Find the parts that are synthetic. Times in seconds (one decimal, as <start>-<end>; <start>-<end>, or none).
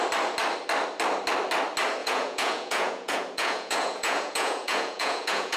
2.0-5.6